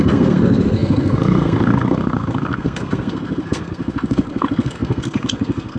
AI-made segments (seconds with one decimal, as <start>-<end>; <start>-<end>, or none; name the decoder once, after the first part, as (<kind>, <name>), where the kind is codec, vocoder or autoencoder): 0.0-5.8 (codec, SNAC)